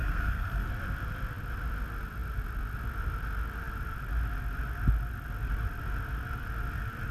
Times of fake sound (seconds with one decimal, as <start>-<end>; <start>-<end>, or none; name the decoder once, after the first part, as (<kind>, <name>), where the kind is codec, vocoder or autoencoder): 0.0-0.7 (codec, SNAC)